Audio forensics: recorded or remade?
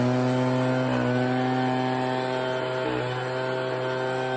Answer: recorded